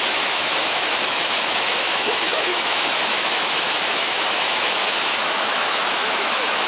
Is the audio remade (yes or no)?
yes